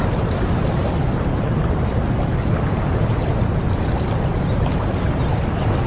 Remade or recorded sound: recorded